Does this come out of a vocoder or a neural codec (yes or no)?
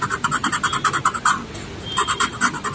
no